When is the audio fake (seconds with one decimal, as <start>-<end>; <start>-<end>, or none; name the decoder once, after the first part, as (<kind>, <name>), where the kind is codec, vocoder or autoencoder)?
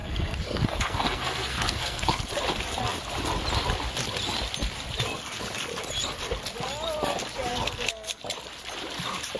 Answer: 0.0-2.3 (codec, SNAC); 7.5-8.2